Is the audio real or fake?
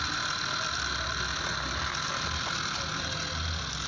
real